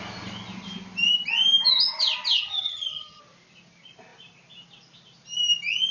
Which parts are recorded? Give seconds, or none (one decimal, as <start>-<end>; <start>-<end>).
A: 0.0-2.3; 3.2-5.9